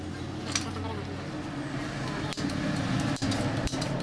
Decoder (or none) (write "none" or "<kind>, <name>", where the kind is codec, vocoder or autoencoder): none